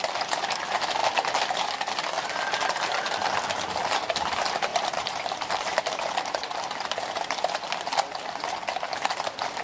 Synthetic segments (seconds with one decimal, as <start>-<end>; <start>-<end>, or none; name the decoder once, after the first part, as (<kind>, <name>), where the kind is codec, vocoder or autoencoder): 4.7-6.6 (vocoder, BigVGAN v2)